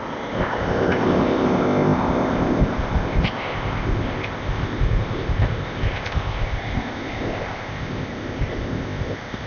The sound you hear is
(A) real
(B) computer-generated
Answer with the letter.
B